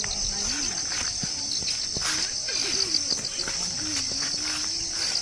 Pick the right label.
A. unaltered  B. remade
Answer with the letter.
A